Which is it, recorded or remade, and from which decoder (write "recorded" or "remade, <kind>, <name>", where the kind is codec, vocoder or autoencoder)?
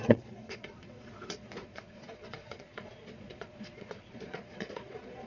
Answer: remade, vocoder, Vocos